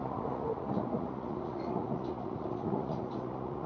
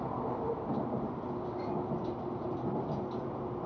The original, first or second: second